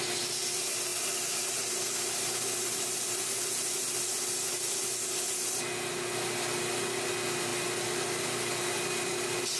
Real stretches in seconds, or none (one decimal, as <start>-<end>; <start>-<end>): 0.0-9.6